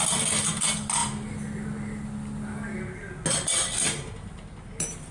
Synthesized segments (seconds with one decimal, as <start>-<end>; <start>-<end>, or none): none